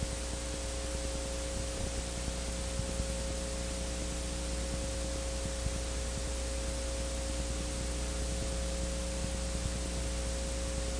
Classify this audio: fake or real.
real